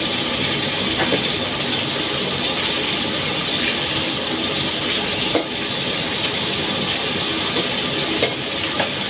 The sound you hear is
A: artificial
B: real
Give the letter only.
B